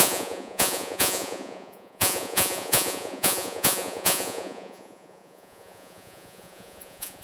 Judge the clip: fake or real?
fake